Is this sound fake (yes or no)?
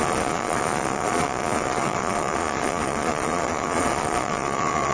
yes